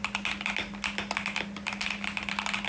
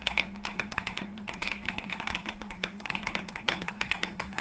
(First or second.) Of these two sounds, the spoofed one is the second